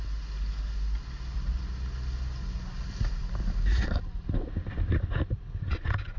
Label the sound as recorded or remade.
recorded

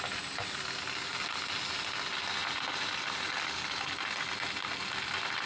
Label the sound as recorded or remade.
recorded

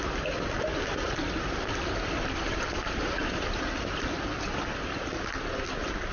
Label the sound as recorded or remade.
recorded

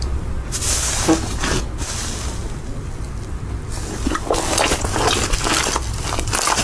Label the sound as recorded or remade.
recorded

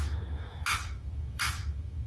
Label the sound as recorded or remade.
remade